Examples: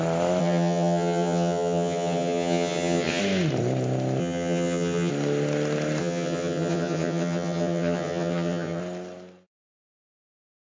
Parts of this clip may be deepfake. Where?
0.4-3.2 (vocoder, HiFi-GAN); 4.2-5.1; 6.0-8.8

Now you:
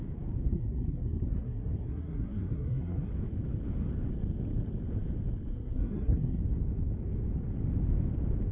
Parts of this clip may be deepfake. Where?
0.5-3.1 (codec, SNAC); 5.5-6.4

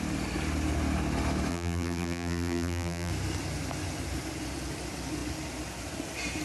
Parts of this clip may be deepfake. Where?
1.5-3.1 (vocoder, BigVGAN v2)

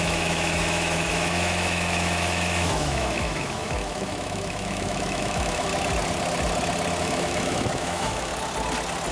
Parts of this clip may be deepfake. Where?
0.0-5.7 (autoencoder, DAC-VAE); 7.0-8.3

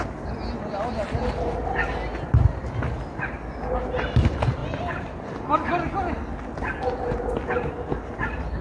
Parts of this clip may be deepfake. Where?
none

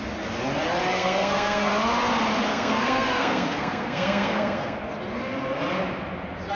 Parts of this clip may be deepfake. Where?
0.9-1.7 (codec, SNAC); 2.5-4.8

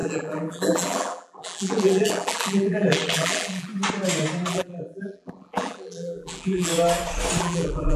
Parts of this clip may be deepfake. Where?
0.0-3.7 (vocoder, BigVGAN v2); 4.5-6.7; 7.4-8.0